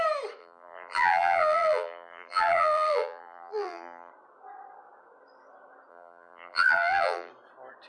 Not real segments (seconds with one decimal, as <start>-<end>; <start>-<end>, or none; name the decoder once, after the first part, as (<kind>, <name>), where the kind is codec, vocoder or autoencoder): 0.4-4.1 (vocoder, BigVGAN v2); 5.9-7.3